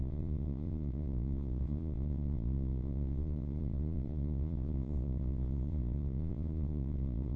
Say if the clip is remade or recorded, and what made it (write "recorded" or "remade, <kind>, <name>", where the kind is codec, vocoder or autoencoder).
remade, vocoder, Vocos